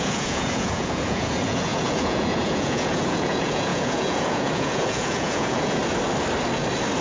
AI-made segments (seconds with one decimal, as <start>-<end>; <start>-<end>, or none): 0.0-5.8